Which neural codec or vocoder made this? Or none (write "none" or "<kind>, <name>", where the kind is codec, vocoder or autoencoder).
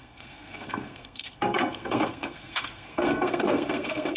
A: codec, SNAC